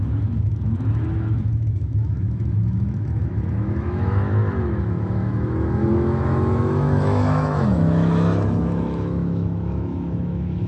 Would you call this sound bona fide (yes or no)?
no